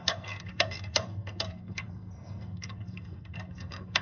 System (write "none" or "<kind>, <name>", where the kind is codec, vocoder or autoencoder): codec, SNAC